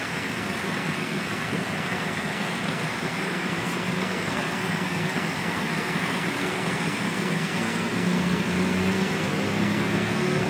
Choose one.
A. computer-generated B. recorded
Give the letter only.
A